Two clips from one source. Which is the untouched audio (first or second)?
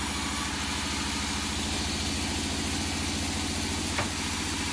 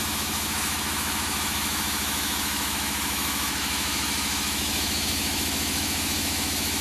first